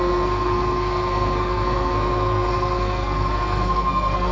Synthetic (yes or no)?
yes